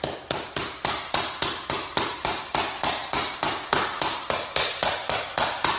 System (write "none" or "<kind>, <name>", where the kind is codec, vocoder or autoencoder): vocoder, BigVGAN v2